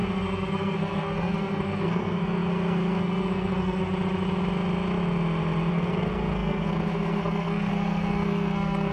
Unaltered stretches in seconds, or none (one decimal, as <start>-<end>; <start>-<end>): 3.8-5.7